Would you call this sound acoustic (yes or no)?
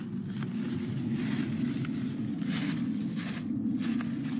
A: yes